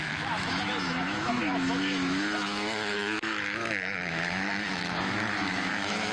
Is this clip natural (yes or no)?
no